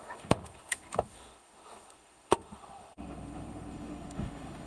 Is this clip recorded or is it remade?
remade